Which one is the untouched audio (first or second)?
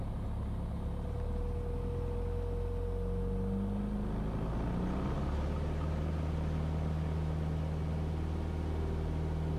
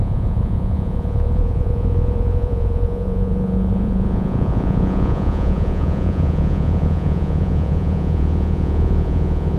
first